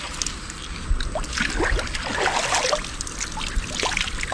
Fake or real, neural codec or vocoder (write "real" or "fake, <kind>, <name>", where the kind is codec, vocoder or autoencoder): real